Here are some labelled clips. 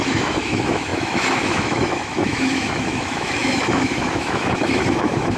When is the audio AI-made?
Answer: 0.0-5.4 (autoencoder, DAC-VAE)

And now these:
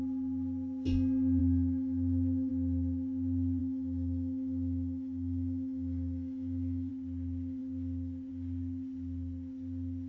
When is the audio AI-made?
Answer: 1.4-2.5 (autoencoder, DAC-VAE); 3.6-6.9

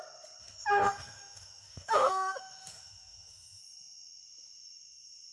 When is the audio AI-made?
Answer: 0.4-3.6 (autoencoder, DAC-VAE)

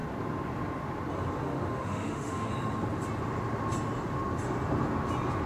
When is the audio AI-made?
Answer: 1.4-2.5 (autoencoder, DAC-VAE)

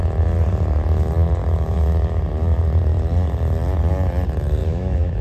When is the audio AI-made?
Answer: 1.4-2.2 (autoencoder, DAC-VAE); 4.6-5.2

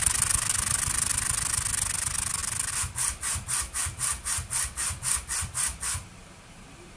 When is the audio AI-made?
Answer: none

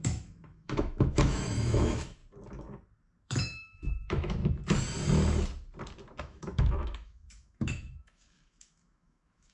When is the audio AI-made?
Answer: 0.0-2.2 (autoencoder, DAC-VAE); 3.2-4.4; 6.2-9.5

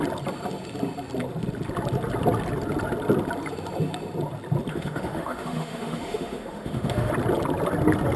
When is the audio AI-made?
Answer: 4.7-7.1 (autoencoder, DAC-VAE)